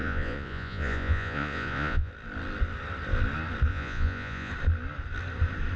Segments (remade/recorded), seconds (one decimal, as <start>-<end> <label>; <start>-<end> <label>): 0.0-2.1 remade; 2.1-3.7 recorded; 3.7-4.5 remade; 4.5-5.8 recorded